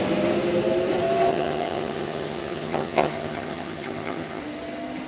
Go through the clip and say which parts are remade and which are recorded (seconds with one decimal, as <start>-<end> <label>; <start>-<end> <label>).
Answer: 0.0-1.3 recorded; 1.3-4.4 remade; 4.4-5.1 recorded